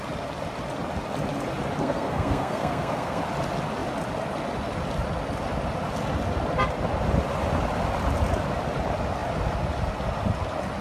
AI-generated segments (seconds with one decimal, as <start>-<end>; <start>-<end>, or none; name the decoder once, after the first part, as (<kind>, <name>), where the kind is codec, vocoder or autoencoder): 1.8-3.2 (codec, SNAC)